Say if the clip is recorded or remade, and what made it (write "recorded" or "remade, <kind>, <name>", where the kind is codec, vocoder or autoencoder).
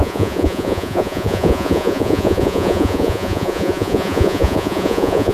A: remade, vocoder, Vocos